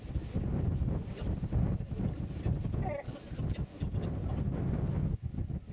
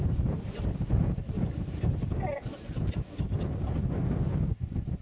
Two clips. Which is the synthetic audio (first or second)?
second